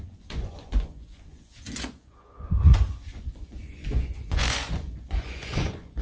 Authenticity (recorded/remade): remade